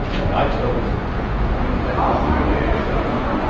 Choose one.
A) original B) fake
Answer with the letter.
B